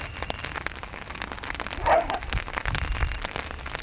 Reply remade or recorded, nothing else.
recorded